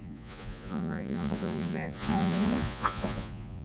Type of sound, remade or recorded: remade